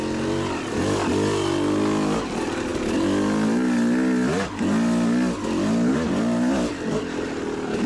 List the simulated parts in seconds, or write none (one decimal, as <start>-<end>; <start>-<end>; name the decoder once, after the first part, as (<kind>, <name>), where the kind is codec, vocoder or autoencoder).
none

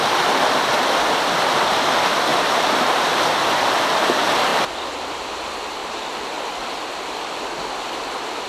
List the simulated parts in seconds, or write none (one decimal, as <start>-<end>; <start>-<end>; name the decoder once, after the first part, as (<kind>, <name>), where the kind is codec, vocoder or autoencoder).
2.3-3.3 (vocoder, BigVGAN v2); 4.5-5.3; 5.8-7.4

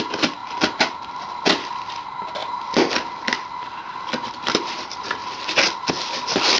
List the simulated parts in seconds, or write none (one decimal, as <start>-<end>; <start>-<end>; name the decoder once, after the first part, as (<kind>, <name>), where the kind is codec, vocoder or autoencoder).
0.0-0.4 (vocoder, BigVGAN v2); 1.9-2.4; 3.9-6.6